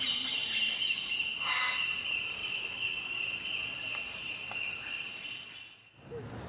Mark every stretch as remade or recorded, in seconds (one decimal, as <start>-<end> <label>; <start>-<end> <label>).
0.0-6.5 recorded